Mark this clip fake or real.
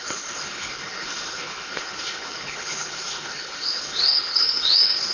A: fake